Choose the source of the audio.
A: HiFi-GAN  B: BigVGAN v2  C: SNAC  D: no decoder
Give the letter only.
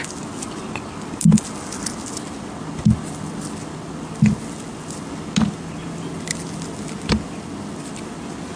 D